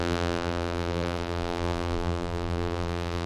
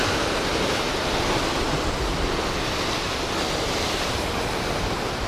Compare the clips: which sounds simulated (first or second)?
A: first